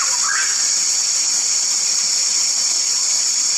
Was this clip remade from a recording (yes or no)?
no